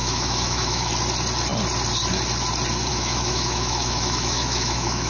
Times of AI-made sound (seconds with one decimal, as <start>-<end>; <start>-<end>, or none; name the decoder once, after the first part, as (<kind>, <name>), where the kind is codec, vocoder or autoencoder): 0.0-0.9 (autoencoder, DAC-VAE); 2.9-5.1